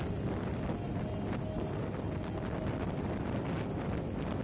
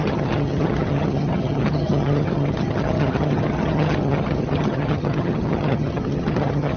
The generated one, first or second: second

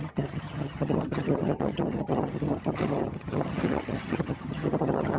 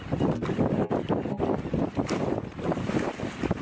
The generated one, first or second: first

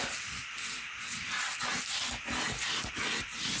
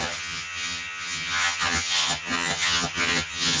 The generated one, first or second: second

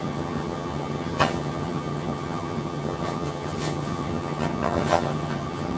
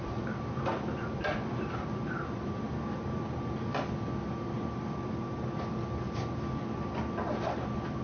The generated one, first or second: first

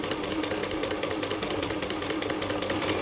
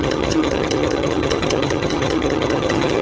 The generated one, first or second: second